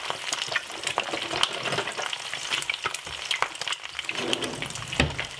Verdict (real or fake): real